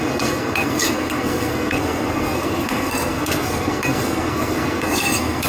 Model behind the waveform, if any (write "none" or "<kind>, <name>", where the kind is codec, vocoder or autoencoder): codec, SNAC